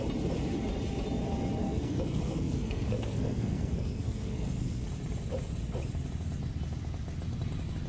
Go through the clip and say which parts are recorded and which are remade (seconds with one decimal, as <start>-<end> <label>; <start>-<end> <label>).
0.0-1.6 recorded; 1.6-4.9 remade; 4.9-7.9 recorded